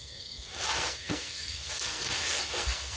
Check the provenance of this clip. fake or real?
fake